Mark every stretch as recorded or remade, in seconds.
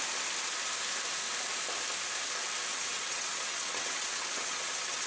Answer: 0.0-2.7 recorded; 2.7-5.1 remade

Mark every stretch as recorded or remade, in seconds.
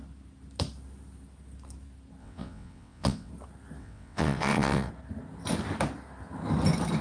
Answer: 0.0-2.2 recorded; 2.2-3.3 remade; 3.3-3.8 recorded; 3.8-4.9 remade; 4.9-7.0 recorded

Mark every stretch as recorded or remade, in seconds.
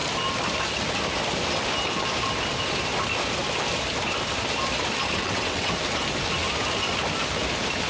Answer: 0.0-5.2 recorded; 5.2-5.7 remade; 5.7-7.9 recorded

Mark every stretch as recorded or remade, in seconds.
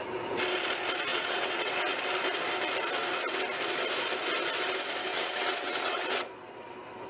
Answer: 0.0-1.1 recorded; 1.1-1.7 remade; 1.7-5.1 recorded; 5.1-6.3 remade; 6.3-7.1 recorded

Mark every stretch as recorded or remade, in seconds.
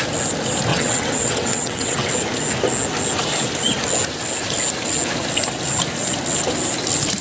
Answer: 0.0-0.7 recorded; 0.7-2.1 remade; 2.1-7.2 recorded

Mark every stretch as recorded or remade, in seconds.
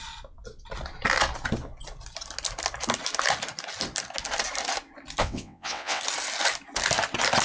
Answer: 0.0-5.2 recorded; 5.2-6.0 remade; 6.0-7.4 recorded